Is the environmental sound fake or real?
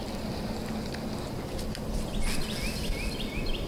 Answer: real